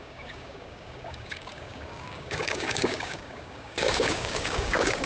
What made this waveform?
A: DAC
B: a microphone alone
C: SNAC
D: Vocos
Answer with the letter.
A